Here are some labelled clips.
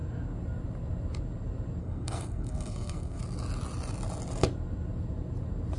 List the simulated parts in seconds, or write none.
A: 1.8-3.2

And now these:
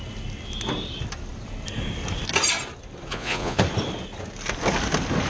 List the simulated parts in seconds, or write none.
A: 3.1-3.6